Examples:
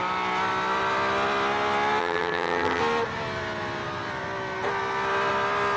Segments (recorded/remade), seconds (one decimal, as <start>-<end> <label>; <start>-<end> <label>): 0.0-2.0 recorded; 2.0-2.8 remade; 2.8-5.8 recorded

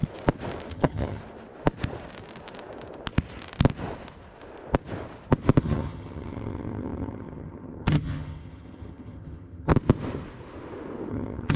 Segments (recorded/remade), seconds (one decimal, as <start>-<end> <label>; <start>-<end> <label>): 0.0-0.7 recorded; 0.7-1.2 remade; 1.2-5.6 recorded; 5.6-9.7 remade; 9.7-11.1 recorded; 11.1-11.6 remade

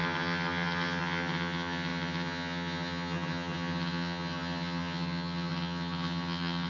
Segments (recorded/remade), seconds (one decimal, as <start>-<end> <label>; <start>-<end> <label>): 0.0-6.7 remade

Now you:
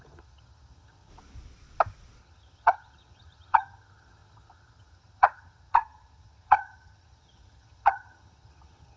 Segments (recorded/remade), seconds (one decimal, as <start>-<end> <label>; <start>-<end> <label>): 0.0-1.1 remade; 1.1-2.2 recorded; 2.2-9.0 remade